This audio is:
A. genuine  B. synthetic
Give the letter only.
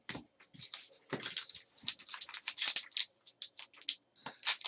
A